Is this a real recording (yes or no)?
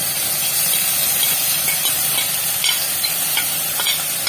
yes